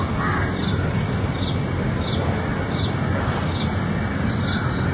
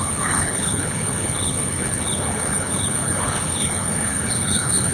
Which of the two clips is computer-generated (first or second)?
second